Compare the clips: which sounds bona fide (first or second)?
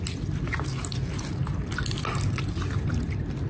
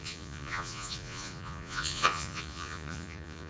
first